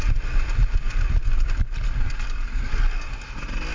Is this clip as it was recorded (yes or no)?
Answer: yes